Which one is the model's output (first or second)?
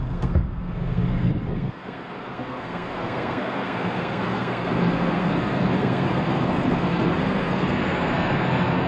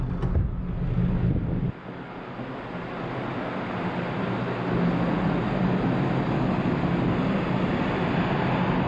first